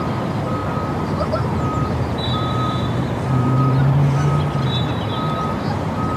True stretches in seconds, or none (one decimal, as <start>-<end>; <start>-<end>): 0.0-0.6; 4.3-6.2